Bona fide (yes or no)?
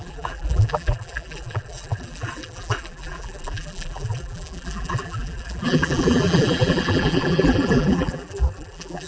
no